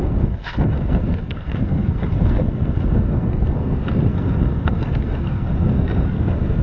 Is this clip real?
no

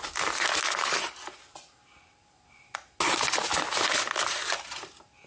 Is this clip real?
yes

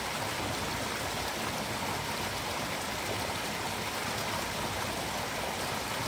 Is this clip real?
yes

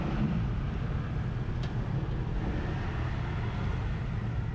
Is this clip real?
yes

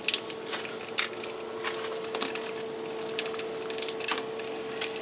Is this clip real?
yes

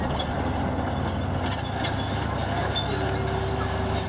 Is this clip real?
yes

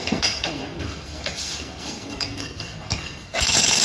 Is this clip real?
no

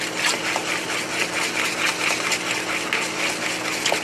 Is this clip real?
yes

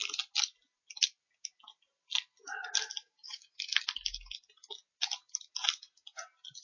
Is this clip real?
yes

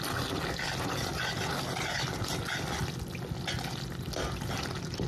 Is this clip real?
yes